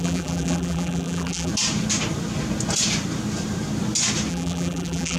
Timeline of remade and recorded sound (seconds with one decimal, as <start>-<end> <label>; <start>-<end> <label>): 0.0-1.5 remade; 1.5-4.3 recorded; 4.3-5.2 remade